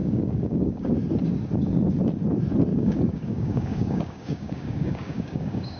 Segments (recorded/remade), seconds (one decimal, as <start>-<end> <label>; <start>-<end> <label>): 0.0-0.9 remade; 0.9-2.7 recorded; 2.7-5.8 remade